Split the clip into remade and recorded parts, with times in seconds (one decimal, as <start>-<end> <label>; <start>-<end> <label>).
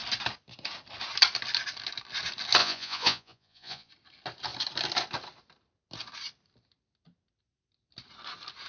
0.0-2.6 recorded; 2.6-3.9 remade; 3.9-8.7 recorded